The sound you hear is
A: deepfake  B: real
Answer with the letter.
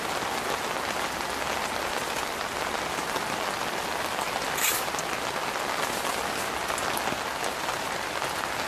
B